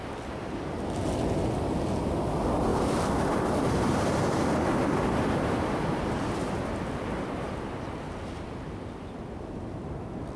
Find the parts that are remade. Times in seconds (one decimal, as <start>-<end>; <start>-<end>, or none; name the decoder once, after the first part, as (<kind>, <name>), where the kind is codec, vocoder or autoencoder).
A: none